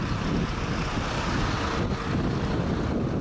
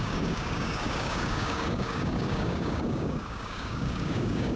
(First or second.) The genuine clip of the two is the first